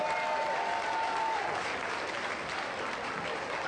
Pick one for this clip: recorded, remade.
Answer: recorded